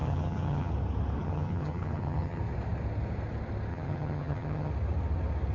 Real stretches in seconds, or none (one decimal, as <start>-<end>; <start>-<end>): 0.7-1.2; 2.4-3.7; 4.7-5.5